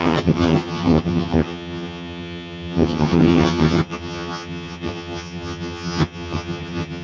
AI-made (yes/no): yes